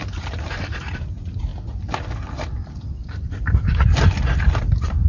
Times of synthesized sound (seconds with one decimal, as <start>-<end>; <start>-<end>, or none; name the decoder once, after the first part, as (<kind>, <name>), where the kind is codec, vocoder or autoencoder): 0.0-1.5 (vocoder, BigVGAN v2); 4.6-5.1